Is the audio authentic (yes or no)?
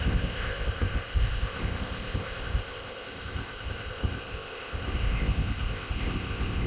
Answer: no